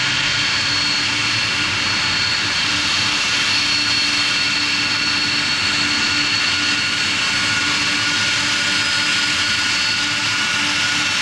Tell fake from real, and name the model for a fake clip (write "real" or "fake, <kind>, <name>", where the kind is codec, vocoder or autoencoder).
real